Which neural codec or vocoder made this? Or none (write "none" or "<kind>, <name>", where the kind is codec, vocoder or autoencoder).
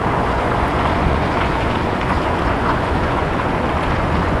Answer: vocoder, Vocos